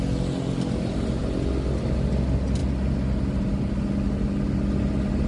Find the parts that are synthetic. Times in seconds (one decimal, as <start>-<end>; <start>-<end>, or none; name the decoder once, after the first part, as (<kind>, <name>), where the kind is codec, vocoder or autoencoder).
none